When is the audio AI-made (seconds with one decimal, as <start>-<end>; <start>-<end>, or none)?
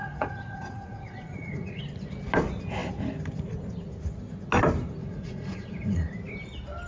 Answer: 0.0-1.8; 5.0-6.1